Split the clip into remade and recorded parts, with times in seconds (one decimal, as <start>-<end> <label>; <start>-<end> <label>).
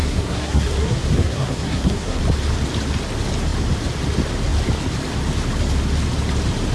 0.0-2.2 remade; 2.2-6.7 recorded